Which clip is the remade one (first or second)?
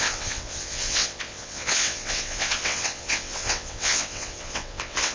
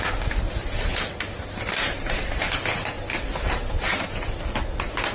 first